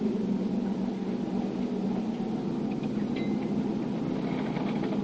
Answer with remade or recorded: recorded